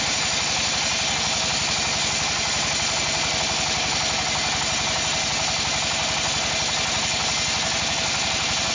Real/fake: real